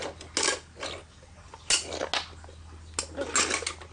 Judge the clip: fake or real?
real